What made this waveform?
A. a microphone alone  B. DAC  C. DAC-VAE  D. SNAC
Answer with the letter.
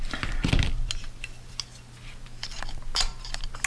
A